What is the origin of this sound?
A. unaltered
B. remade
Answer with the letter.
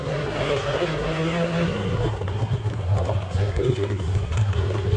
B